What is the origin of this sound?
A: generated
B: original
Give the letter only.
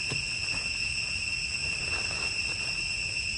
B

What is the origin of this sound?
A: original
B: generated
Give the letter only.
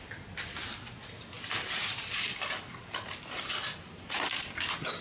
B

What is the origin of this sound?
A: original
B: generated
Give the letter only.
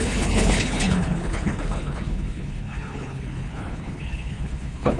B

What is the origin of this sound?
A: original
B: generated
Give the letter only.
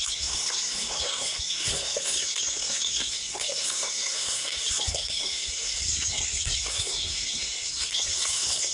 B